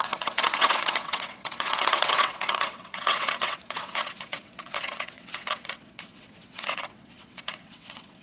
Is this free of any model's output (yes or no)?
no